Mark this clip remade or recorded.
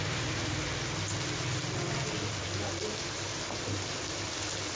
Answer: recorded